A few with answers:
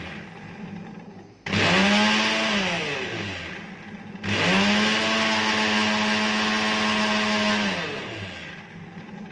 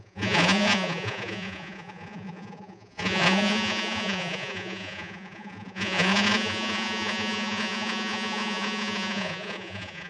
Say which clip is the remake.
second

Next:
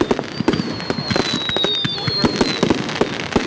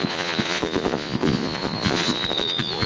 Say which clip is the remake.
second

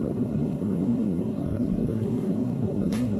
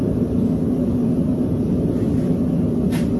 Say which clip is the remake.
first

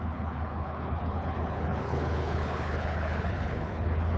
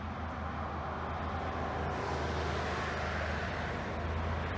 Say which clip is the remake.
first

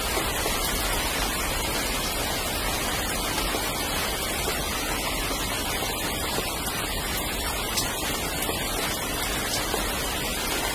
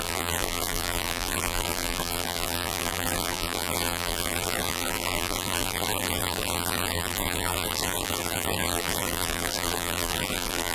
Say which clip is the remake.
second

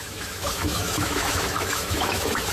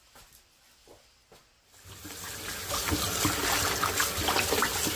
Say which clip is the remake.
first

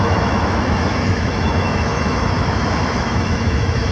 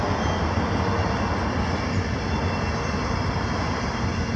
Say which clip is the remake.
first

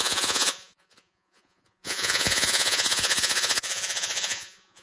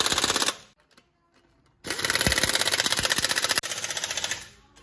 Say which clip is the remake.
first